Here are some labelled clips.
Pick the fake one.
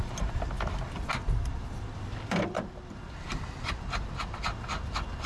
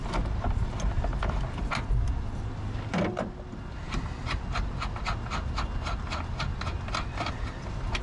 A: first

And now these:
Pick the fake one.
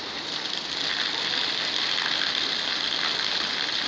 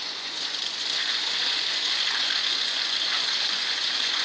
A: second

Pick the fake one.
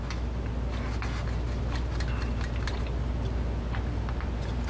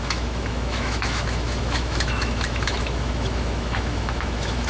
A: second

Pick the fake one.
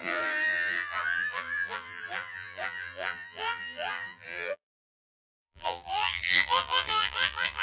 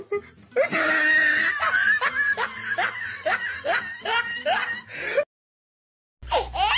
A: first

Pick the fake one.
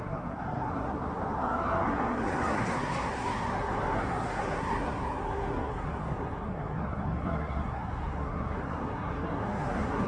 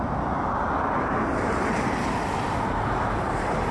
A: first